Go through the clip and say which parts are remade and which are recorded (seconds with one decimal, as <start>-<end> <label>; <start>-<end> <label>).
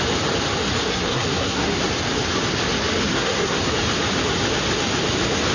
0.0-0.9 recorded; 0.9-1.8 remade; 1.8-3.1 recorded; 3.1-3.7 remade; 3.7-5.5 recorded